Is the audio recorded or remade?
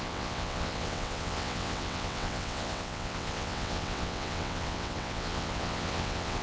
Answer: remade